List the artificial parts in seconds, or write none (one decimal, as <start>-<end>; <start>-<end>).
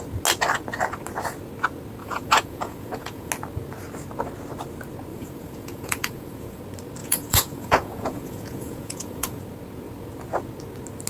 2.0-3.3; 5.1-6.6; 7.0-9.4